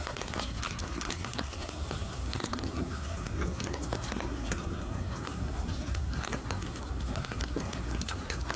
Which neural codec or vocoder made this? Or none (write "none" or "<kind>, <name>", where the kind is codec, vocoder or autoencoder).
codec, SNAC